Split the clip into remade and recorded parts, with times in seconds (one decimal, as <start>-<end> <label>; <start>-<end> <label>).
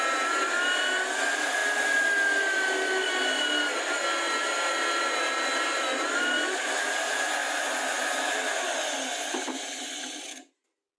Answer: 0.0-11.0 recorded